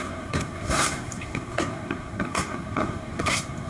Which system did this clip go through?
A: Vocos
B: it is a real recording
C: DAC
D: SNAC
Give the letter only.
D